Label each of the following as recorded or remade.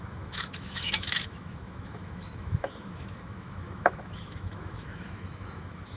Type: remade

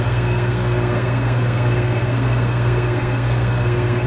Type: remade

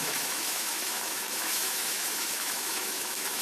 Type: remade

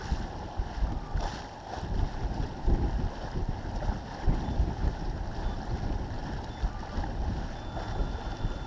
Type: recorded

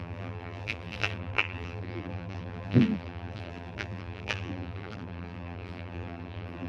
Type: remade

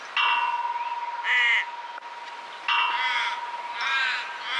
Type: recorded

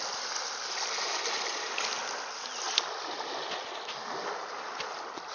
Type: recorded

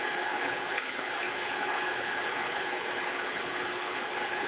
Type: remade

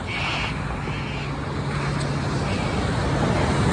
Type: recorded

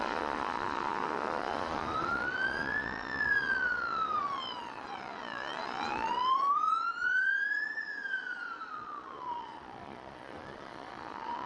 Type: remade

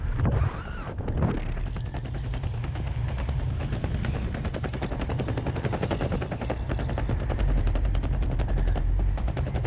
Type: recorded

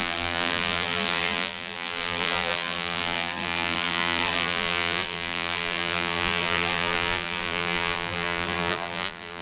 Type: remade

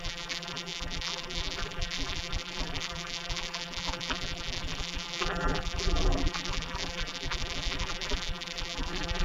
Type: remade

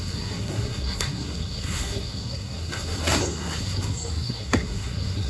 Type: remade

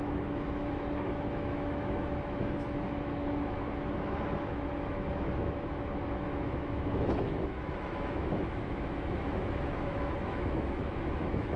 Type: remade